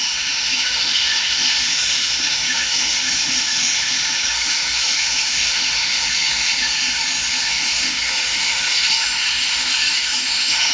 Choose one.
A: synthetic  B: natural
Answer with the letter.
A